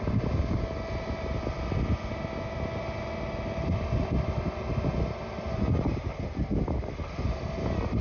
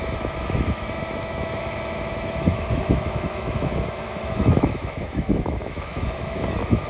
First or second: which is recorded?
first